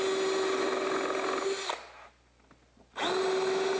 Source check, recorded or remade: recorded